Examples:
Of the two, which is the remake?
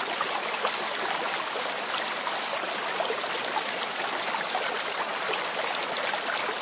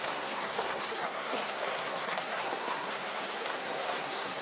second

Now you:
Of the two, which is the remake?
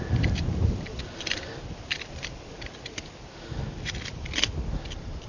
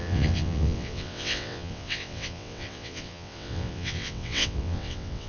second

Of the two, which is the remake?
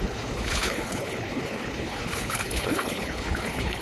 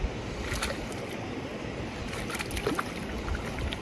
first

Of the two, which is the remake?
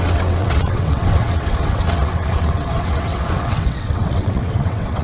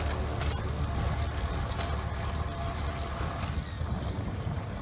first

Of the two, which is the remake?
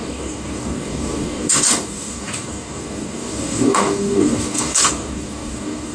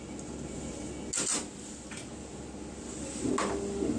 first